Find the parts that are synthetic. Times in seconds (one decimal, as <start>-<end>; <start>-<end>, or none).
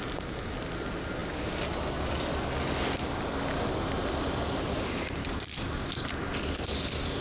none